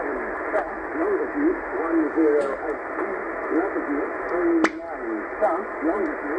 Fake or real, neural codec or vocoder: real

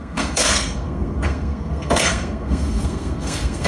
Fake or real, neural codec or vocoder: fake, codec, SNAC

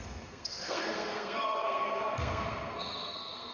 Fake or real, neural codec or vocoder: fake, codec, SNAC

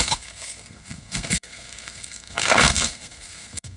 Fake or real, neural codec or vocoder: fake, codec, SNAC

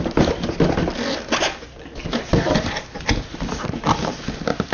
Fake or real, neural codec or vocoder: real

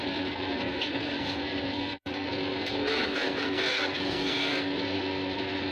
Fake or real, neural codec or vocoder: fake, codec, SNAC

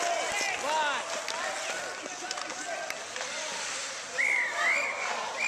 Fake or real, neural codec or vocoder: real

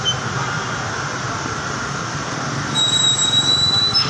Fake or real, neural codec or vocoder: real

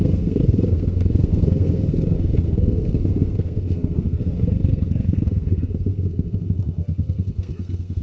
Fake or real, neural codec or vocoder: fake, codec, SNAC